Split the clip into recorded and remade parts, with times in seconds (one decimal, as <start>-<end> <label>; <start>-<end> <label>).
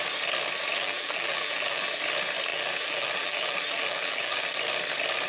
0.0-0.7 recorded; 0.7-2.0 remade; 2.0-2.5 recorded; 2.5-4.5 remade; 4.5-5.3 recorded